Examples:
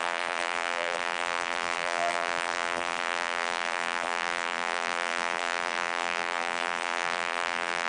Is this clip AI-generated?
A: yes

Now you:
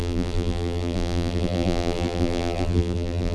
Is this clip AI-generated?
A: yes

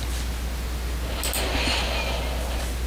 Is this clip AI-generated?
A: no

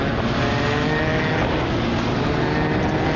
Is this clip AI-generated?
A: no